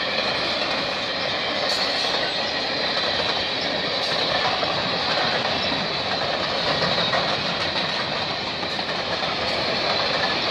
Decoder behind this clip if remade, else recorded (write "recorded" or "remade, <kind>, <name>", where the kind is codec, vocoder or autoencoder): recorded